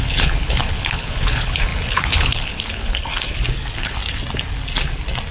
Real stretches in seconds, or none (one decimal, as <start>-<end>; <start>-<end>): 4.0-5.3

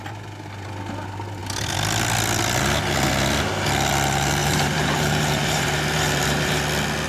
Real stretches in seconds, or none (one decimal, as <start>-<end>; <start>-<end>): 0.0-4.4; 6.6-7.1